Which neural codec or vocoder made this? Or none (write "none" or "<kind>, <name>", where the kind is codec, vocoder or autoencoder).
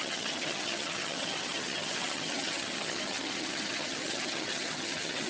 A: vocoder, HiFi-GAN